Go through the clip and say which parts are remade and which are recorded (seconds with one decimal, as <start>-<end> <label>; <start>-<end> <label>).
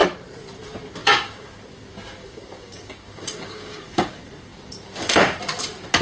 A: 0.0-1.0 recorded; 1.0-1.5 remade; 1.5-2.2 recorded; 2.2-4.1 remade; 4.1-6.0 recorded